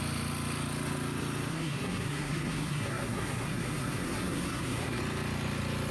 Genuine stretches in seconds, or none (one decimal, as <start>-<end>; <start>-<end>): 0.0-1.5; 5.0-5.9